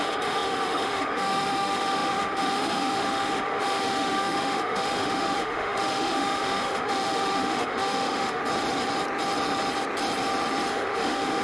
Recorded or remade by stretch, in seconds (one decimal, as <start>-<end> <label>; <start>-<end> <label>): 0.0-8.4 remade; 8.4-10.7 recorded; 10.7-11.4 remade